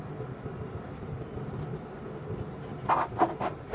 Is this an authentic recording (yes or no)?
yes